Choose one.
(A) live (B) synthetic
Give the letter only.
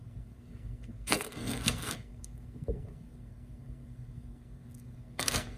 B